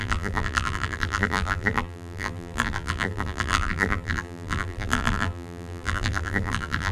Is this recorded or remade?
remade